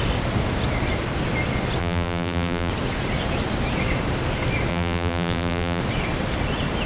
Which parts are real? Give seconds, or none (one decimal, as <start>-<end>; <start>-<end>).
0.0-1.8; 2.7-4.7; 5.8-6.9